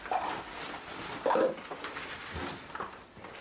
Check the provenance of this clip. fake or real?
real